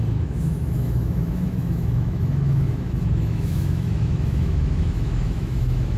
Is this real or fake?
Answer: fake